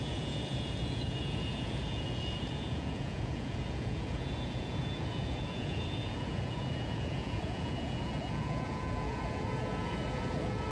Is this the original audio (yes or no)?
no